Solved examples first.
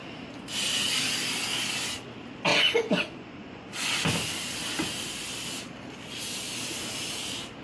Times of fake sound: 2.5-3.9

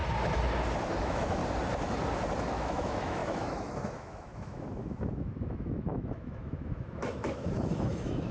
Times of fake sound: 1.0-1.4; 2.5-8.3

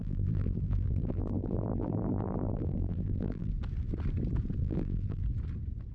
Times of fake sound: 0.0-3.5; 4.6-5.2

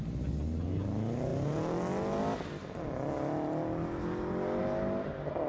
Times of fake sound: none

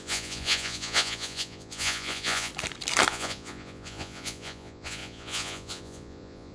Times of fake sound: 0.0-2.5; 3.1-6.5

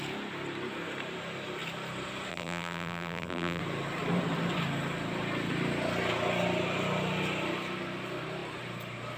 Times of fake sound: 2.3-3.6

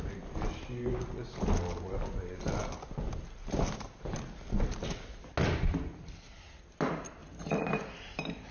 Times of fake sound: 3.4-4.2; 7.2-8.5